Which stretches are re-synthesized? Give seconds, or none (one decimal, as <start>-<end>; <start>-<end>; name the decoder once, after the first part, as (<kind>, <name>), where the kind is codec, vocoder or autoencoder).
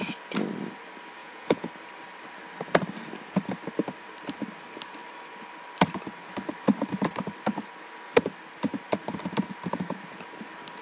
1.2-1.7 (vocoder, Vocos)